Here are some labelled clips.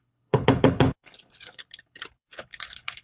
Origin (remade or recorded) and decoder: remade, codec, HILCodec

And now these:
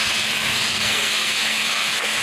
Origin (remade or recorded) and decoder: remade, codec, SNAC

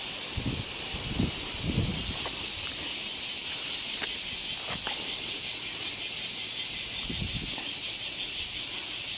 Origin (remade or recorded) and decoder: recorded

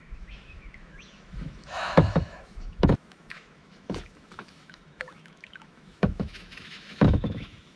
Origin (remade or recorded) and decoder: remade, autoencoder, DAC-VAE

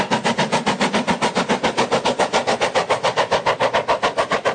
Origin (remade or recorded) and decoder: recorded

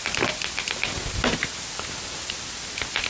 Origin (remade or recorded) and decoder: recorded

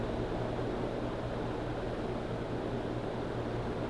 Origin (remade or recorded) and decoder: recorded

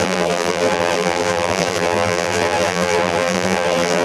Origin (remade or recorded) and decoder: remade, vocoder, BigVGAN v2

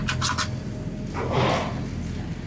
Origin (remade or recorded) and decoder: recorded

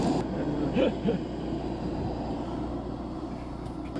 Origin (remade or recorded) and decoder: recorded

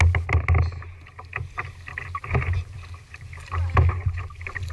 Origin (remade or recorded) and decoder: recorded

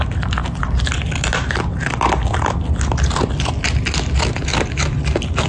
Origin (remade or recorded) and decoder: recorded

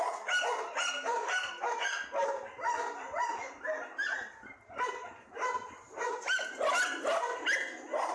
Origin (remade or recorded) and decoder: recorded